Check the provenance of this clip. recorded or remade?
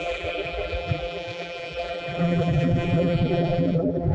remade